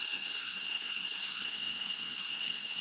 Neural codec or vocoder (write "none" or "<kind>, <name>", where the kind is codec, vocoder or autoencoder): codec, SNAC